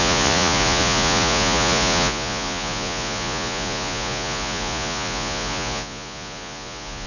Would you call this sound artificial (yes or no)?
yes